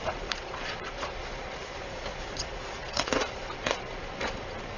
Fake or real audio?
fake